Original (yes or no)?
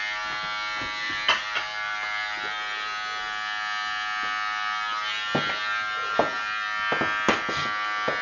yes